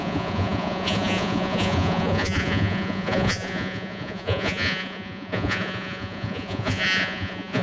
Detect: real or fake fake